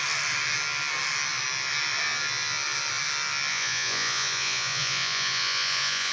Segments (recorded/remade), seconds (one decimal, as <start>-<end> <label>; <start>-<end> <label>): 0.0-3.5 recorded; 3.5-6.1 remade